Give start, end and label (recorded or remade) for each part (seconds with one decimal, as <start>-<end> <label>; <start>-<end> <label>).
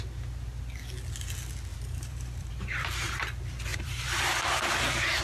0.0-1.7 recorded; 1.7-2.5 remade; 2.5-3.7 recorded; 3.7-5.2 remade